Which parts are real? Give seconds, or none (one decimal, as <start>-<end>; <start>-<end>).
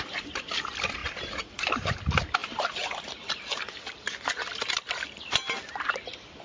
0.0-6.4